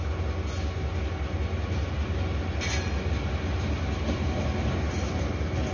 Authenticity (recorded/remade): recorded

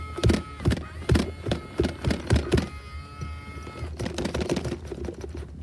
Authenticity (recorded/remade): recorded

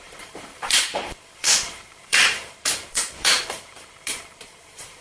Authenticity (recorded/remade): remade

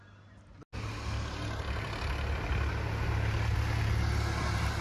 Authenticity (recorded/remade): recorded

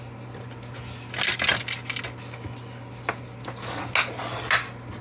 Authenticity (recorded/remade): recorded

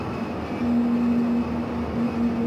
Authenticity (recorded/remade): recorded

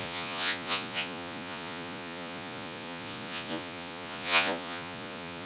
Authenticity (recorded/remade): remade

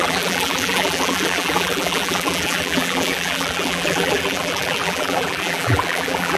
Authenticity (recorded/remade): remade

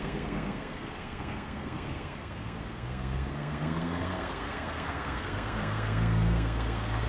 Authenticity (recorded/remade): remade